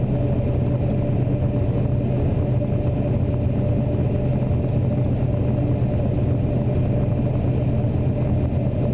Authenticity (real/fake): real